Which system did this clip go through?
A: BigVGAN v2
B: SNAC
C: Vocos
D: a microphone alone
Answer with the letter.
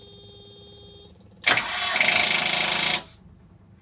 D